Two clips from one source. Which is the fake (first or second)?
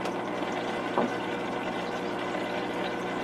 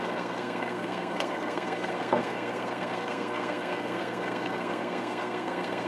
second